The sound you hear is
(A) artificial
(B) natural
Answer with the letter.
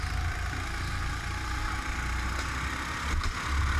B